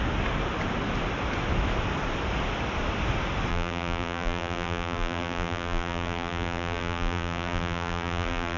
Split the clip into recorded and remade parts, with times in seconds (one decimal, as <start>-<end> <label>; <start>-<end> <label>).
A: 0.0-3.5 recorded; 3.5-8.6 remade